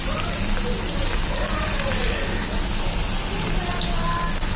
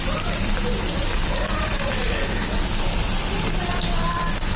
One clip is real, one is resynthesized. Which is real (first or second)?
first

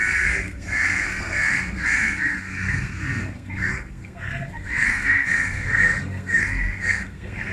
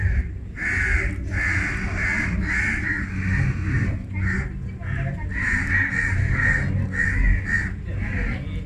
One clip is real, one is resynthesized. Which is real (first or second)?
second